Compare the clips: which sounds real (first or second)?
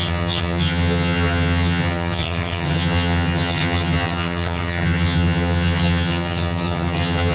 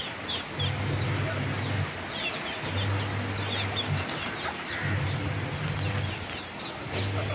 second